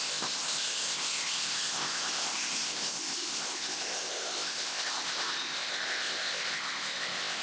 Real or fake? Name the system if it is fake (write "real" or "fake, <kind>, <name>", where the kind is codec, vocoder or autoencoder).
fake, codec, ZipCodec